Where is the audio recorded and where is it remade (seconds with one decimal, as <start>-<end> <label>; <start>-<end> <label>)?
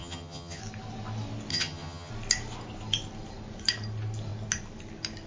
0.0-0.6 remade; 0.6-1.5 recorded; 1.5-2.1 remade; 2.1-5.3 recorded